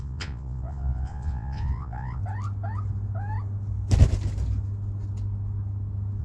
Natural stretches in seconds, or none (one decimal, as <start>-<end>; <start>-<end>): 2.2-6.2